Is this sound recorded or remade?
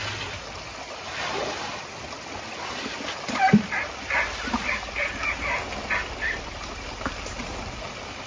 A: recorded